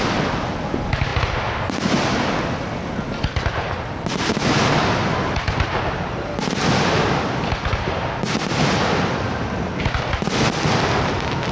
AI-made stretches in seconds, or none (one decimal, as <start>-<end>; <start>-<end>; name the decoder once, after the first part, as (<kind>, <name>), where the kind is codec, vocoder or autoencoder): none